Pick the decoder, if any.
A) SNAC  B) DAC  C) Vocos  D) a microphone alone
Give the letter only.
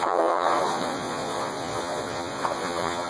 C